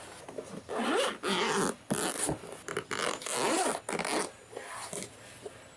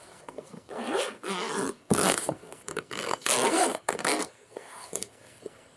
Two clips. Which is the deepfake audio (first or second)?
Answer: second